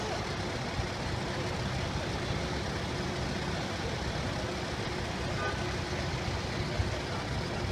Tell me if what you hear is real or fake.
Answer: real